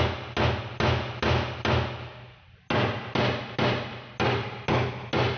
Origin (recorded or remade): recorded